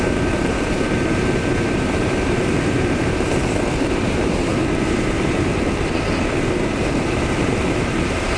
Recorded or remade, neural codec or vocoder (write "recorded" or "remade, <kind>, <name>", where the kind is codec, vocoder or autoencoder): remade, vocoder, BigVGAN v2